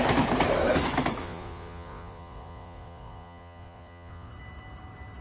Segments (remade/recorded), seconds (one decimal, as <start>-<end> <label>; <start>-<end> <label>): 0.0-1.2 recorded; 1.2-4.3 remade; 4.3-5.2 recorded